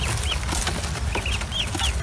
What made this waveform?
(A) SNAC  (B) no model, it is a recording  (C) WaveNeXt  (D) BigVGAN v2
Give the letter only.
B